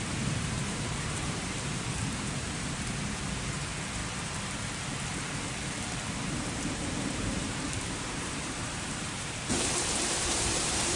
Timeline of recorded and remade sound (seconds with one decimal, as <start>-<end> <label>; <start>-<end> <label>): 0.0-4.0 remade; 4.0-6.3 recorded; 6.3-11.0 remade